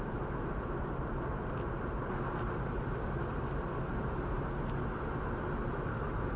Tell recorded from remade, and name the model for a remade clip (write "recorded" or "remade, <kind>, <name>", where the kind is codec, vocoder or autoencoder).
recorded